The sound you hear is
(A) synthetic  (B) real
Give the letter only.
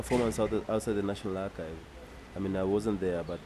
B